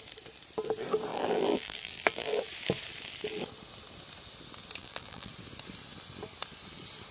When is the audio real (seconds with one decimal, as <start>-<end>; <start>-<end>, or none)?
0.0-1.1; 2.4-4.8; 5.3-7.1